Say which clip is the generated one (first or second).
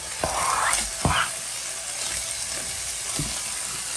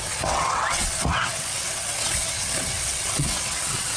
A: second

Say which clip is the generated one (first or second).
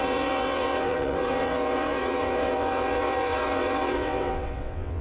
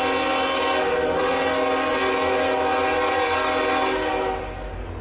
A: first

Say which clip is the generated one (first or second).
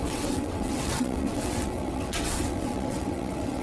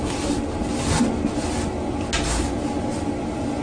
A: first